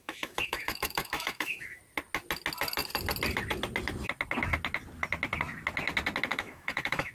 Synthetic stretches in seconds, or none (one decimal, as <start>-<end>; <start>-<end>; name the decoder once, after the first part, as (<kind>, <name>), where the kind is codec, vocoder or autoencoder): 0.0-1.8 (autoencoder, DAC-VAE); 6.3-7.1